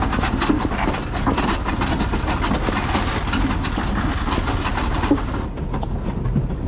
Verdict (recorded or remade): recorded